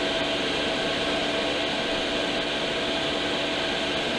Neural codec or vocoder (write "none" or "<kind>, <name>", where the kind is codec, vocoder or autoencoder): none